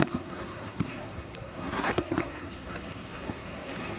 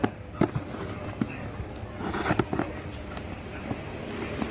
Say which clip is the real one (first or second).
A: second